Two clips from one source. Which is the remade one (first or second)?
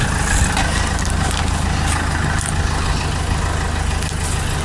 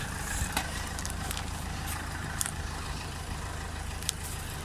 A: second